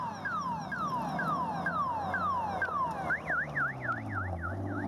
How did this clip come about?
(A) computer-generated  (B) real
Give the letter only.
B